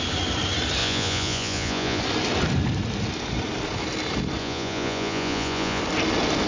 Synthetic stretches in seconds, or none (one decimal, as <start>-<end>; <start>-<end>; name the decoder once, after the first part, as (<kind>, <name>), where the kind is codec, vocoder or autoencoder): 0.8-2.0 (vocoder, Vocos); 4.4-5.8